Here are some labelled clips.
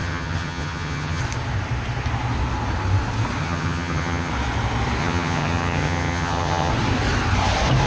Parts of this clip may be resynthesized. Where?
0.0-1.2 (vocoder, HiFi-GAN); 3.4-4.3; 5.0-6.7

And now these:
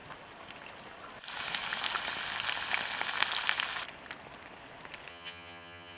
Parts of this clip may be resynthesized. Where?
5.1-6.0 (vocoder, HiFi-GAN)

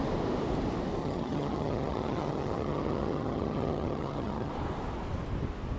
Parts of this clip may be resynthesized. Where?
1.0-4.5 (vocoder, HiFi-GAN)

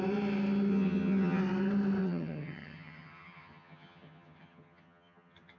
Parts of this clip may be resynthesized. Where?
0.7-1.4 (vocoder, HiFi-GAN); 2.0-5.6

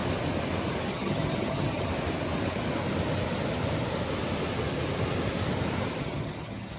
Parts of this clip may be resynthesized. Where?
0.9-1.9 (vocoder, HiFi-GAN); 6.0-6.8

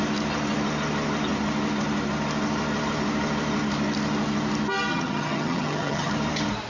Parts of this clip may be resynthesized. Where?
4.9-6.1 (vocoder, HiFi-GAN)